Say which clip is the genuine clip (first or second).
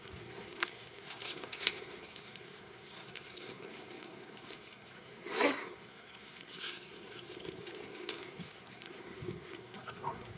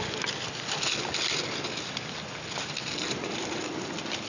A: second